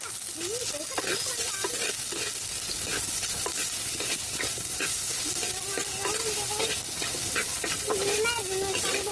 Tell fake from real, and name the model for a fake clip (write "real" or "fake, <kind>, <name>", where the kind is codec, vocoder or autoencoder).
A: real